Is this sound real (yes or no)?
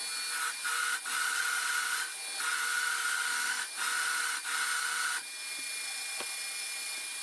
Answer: yes